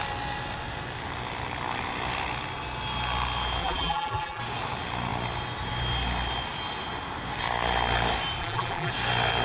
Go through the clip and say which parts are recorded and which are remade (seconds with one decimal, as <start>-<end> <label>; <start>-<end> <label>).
0.0-3.6 recorded; 3.6-4.4 remade; 4.4-8.4 recorded; 8.4-8.9 remade; 8.9-9.4 recorded